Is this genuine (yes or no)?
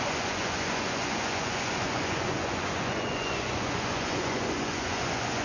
no